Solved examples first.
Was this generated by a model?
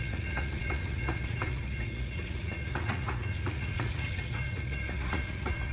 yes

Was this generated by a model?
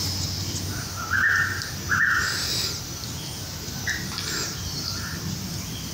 no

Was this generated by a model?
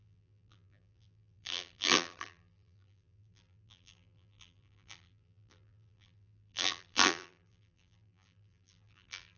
yes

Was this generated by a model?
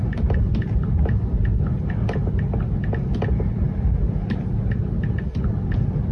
no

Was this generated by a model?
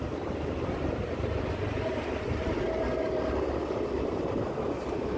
no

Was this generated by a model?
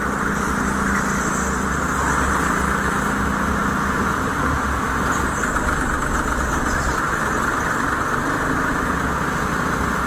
no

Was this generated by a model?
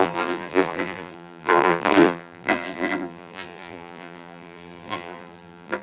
yes